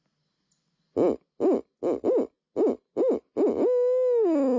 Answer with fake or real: real